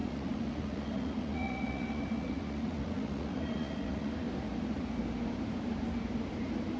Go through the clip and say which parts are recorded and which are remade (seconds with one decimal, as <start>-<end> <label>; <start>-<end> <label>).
0.0-4.1 remade; 4.1-6.8 recorded